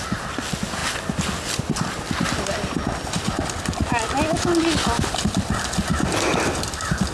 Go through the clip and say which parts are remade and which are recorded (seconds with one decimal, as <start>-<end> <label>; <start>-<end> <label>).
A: 0.0-7.1 recorded